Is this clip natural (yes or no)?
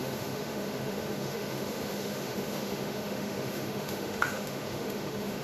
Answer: no